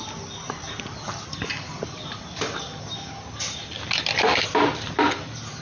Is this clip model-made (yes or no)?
no